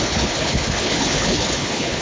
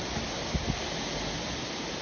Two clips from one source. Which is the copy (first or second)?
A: first